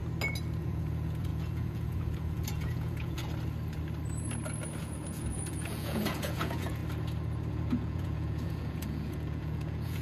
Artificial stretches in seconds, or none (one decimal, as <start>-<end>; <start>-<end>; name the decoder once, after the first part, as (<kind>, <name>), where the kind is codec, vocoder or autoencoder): 0.6-3.2 (vocoder, Vocos); 4.8-6.8; 7.5-10.0